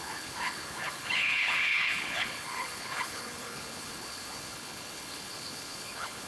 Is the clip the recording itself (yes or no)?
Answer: no